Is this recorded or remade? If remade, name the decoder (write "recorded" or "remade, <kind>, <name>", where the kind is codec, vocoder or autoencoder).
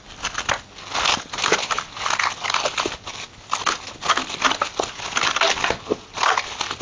remade, vocoder, BigVGAN v2